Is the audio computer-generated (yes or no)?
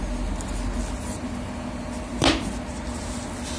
no